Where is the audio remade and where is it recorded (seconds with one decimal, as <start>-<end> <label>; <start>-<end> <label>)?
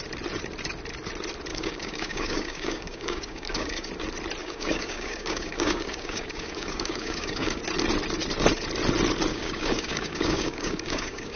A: 0.0-1.5 recorded; 1.5-3.9 remade; 3.9-4.4 recorded; 4.4-7.6 remade; 7.6-9.3 recorded; 9.3-11.4 remade